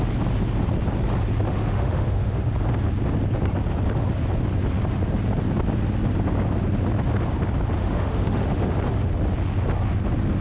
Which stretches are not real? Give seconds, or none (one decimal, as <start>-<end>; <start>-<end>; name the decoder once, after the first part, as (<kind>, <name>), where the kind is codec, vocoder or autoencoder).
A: 1.5-2.5 (autoencoder, DAC-VAE); 7.8-8.7